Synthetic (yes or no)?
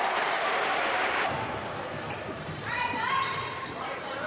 yes